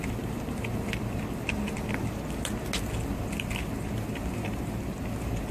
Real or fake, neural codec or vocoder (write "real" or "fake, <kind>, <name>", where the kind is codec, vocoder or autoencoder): real